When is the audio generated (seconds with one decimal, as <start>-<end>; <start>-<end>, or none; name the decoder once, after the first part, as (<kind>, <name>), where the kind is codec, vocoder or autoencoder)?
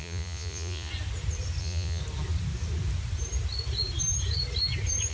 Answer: 0.0-0.9 (vocoder, Vocos); 1.6-2.0